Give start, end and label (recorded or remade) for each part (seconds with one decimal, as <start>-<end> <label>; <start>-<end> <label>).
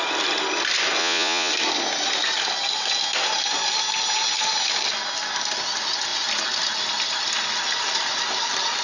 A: 0.0-1.0 recorded; 1.0-1.5 remade; 1.5-8.8 recorded